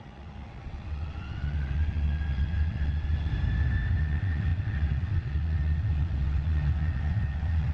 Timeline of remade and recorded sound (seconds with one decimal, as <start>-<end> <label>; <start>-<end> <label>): 0.0-3.3 remade; 3.3-4.0 recorded; 4.0-7.7 remade